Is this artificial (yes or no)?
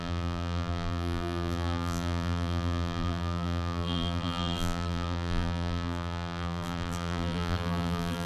yes